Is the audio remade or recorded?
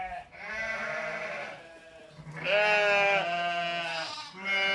recorded